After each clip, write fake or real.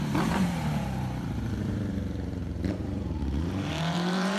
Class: fake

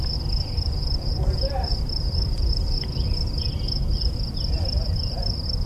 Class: fake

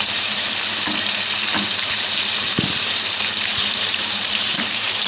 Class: fake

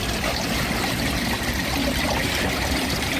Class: fake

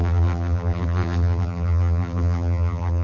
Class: fake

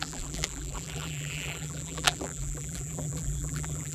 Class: fake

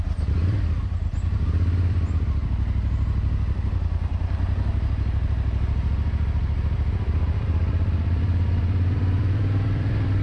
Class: fake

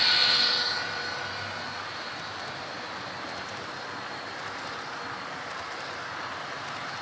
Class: real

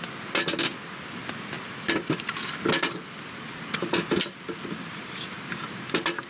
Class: real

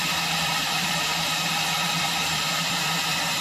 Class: fake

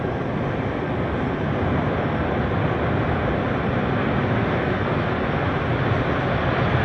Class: real